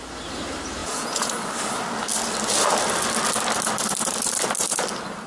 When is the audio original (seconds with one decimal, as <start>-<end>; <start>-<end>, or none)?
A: 0.0-0.8; 1.3-5.3